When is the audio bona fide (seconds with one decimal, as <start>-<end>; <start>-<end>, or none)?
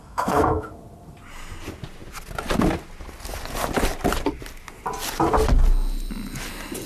0.7-6.9